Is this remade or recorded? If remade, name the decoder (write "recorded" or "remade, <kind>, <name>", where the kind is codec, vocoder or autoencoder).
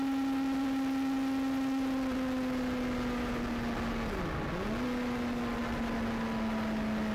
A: recorded